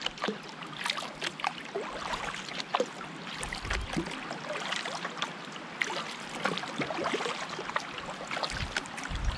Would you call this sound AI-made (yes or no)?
no